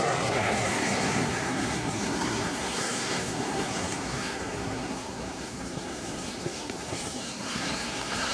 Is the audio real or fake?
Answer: fake